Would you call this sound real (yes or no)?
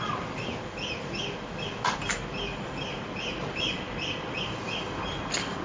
yes